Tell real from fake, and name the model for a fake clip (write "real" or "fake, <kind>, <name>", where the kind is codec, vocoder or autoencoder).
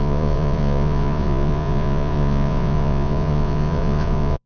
fake, vocoder, Vocos